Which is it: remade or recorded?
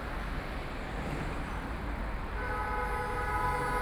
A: recorded